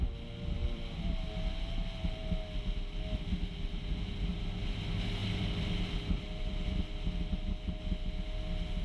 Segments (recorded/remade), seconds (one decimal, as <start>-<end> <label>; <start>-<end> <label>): 0.0-0.6 recorded; 0.6-1.2 remade; 1.2-5.2 recorded; 5.2-6.9 remade; 6.9-8.8 recorded